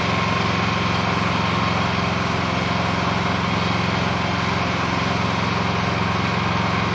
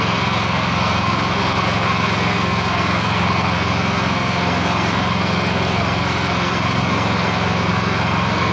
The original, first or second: first